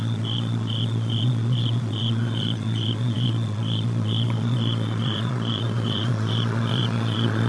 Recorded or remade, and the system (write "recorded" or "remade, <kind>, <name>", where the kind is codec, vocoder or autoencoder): remade, vocoder, Vocos